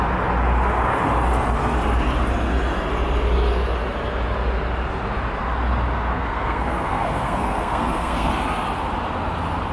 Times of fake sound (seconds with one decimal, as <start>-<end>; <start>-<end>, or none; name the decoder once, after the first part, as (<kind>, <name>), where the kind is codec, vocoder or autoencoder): 6.1-8.3 (codec, SNAC)